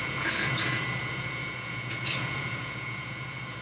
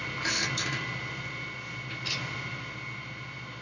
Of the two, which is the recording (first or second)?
second